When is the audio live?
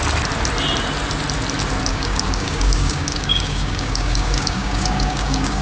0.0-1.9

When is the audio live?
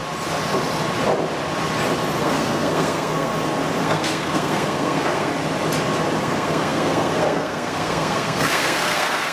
0.0-2.2; 3.3-3.8; 5.3-6.2